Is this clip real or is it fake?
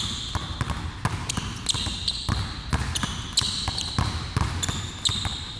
real